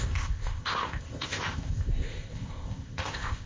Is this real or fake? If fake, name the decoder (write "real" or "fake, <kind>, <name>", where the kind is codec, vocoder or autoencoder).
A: fake, codec, ZipCodec